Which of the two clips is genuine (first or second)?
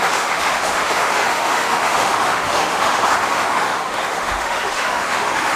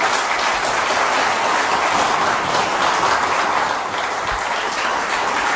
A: second